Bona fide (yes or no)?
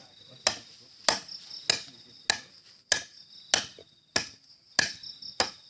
yes